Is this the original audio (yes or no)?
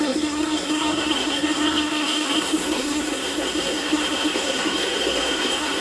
no